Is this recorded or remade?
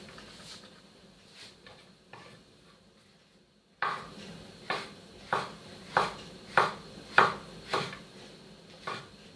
recorded